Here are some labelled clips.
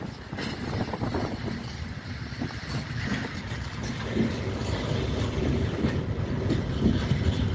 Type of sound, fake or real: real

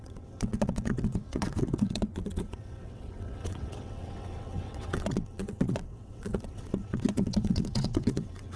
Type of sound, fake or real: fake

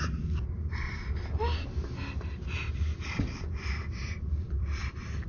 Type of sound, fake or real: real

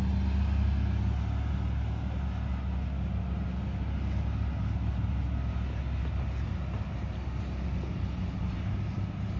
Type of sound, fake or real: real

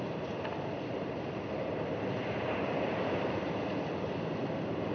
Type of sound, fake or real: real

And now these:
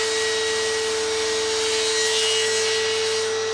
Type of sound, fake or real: real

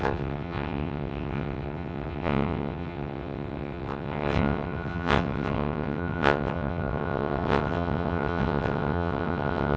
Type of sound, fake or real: fake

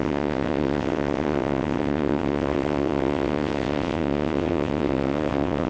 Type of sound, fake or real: fake